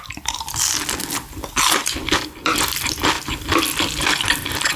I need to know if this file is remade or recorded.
remade